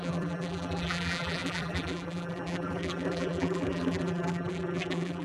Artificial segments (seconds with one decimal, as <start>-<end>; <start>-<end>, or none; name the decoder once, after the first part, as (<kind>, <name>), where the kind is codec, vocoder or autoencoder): 0.0-5.2 (vocoder, BigVGAN v2)